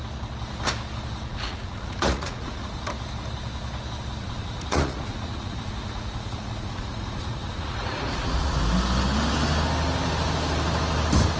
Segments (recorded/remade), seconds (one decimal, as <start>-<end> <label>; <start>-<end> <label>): 0.0-1.3 recorded; 1.3-2.9 remade; 2.9-4.2 recorded; 4.2-8.6 remade; 8.6-11.4 recorded